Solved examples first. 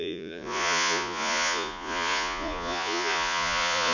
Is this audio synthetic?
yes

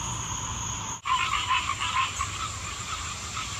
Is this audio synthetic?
no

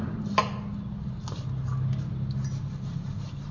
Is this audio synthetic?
no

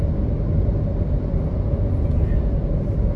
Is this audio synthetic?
no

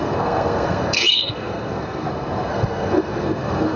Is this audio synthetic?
yes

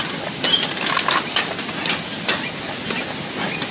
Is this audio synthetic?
no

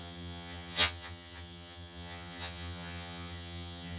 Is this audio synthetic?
yes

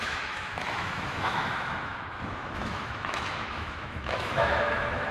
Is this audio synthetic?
yes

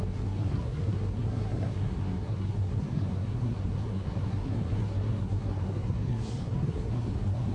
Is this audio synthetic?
yes